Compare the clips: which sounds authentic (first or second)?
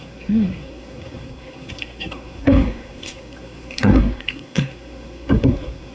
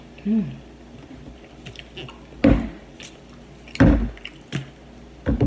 second